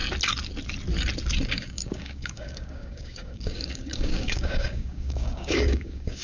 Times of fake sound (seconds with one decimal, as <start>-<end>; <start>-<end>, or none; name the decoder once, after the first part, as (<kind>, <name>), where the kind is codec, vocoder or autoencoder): 1.5-6.2 (codec, DAC)